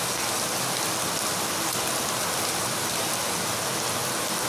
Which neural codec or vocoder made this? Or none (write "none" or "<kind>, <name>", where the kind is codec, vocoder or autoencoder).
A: none